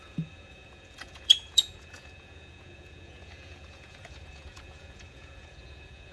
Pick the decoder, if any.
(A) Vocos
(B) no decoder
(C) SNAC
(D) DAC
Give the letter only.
A